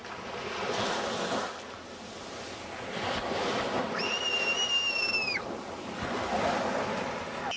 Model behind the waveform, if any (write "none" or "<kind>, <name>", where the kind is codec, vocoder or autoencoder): none